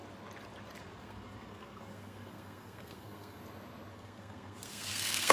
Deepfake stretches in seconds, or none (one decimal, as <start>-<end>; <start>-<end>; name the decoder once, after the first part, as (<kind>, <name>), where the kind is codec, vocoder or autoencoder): 0.8-3.4 (codec, SNAC); 3.9-5.3